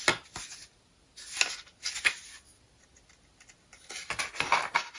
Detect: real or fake real